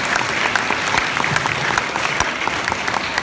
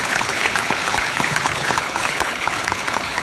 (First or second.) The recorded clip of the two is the first